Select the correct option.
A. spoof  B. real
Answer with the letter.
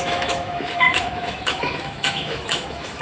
A